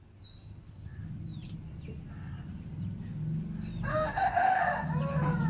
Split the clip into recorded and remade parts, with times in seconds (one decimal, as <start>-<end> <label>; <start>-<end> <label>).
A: 0.0-3.9 recorded; 3.9-4.6 remade; 4.6-5.5 recorded